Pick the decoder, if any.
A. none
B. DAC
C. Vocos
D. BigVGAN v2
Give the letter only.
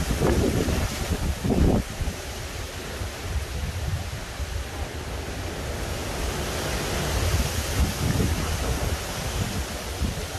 A